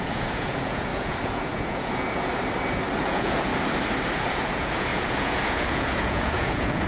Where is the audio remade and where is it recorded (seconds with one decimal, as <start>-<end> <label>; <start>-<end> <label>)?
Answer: 0.0-2.3 remade; 2.3-3.0 recorded; 3.0-3.5 remade; 3.5-4.2 recorded; 4.2-6.9 remade

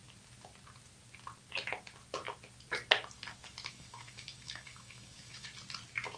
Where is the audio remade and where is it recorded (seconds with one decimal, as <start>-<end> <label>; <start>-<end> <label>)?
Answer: 0.0-3.7 recorded; 3.7-5.5 remade; 5.5-6.2 recorded

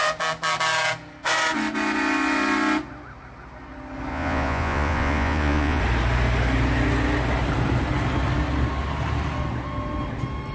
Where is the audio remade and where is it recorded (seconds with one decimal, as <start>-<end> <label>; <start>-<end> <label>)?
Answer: 0.0-4.1 recorded; 4.1-5.8 remade; 5.8-10.5 recorded

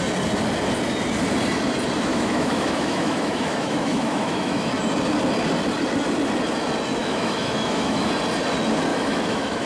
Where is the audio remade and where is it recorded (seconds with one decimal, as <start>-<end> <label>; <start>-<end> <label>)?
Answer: 0.0-2.1 recorded; 2.1-4.7 remade; 4.7-7.0 recorded; 7.0-8.1 remade; 8.1-8.9 recorded; 8.9-9.7 remade

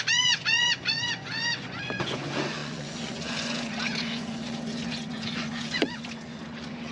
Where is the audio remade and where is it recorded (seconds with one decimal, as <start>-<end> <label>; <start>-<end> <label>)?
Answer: 0.0-6.9 remade

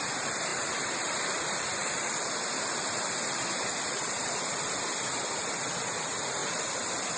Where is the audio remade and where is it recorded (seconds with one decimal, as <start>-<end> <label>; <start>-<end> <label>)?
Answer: 0.0-0.5 recorded; 0.5-2.3 remade; 2.3-6.4 recorded; 6.4-7.2 remade